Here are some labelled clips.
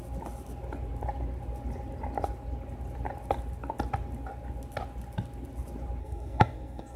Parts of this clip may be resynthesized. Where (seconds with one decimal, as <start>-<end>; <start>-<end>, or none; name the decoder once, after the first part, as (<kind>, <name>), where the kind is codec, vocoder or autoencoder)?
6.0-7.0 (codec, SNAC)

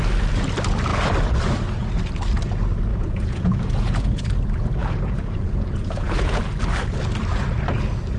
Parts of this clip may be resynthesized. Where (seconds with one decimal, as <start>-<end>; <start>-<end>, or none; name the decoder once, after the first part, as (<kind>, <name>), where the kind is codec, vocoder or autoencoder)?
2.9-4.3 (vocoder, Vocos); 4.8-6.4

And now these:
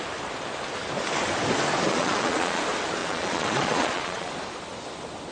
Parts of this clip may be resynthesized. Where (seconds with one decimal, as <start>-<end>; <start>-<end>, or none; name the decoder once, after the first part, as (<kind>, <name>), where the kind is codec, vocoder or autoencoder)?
1.9-2.6 (vocoder, Vocos); 3.0-4.3

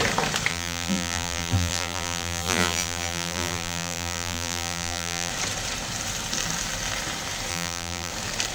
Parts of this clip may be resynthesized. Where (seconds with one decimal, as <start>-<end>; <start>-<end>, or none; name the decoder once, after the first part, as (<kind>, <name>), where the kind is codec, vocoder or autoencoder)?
0.5-5.3 (vocoder, BigVGAN v2); 7.5-8.1

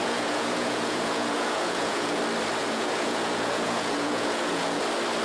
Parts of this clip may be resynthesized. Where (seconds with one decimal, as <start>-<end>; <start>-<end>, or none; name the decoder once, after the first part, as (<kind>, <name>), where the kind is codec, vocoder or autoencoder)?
0.0-2.2 (vocoder, Vocos); 2.6-4.8

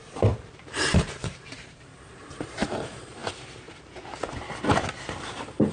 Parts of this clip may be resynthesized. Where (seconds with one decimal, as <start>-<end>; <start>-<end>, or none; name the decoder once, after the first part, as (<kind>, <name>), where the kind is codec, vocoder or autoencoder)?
0.0-3.2 (vocoder, BigVGAN v2)

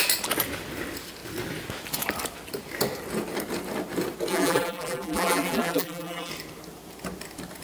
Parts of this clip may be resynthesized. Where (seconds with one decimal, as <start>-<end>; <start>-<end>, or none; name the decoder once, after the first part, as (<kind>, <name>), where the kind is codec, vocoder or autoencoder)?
4.3-6.3 (vocoder, BigVGAN v2)

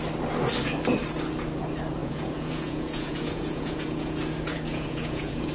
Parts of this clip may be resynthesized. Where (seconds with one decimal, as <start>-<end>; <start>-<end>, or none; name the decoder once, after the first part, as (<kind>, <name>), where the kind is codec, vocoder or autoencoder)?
2.0-5.5 (vocoder, Vocos)